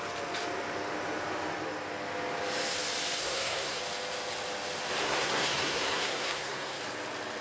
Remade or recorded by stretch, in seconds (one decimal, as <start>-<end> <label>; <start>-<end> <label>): 0.0-3.2 recorded; 3.2-3.8 remade; 3.8-5.0 recorded; 5.0-6.8 remade; 6.8-7.4 recorded

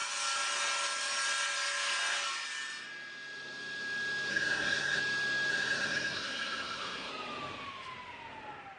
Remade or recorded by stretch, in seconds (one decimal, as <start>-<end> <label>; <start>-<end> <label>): 0.0-4.3 recorded; 4.3-5.0 remade; 5.0-5.5 recorded; 5.5-7.1 remade; 7.1-8.8 recorded

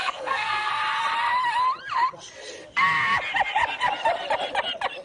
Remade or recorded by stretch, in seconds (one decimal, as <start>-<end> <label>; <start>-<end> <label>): 0.0-0.7 remade; 0.7-5.0 recorded

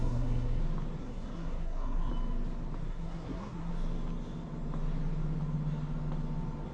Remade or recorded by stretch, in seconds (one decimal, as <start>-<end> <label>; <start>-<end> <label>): 0.0-0.6 remade; 0.6-1.0 recorded; 1.0-2.1 remade; 2.1-2.9 recorded; 2.9-3.7 remade; 3.7-6.7 recorded

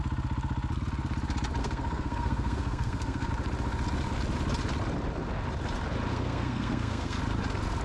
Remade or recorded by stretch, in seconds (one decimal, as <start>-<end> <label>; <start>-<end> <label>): 0.0-1.6 recorded; 1.6-3.3 remade; 3.3-6.1 recorded; 6.1-7.2 remade; 7.2-7.8 recorded